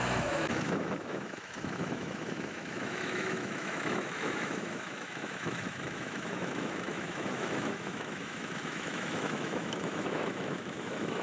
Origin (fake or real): fake